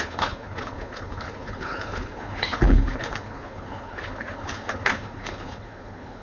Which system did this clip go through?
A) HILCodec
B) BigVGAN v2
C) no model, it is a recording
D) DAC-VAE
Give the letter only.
A